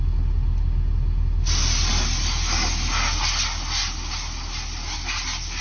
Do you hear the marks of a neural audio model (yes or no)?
no